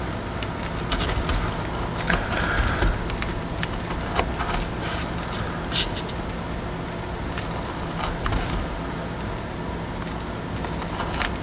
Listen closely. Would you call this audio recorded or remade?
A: recorded